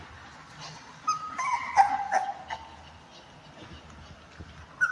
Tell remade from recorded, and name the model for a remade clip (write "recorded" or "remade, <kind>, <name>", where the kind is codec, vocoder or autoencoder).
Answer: recorded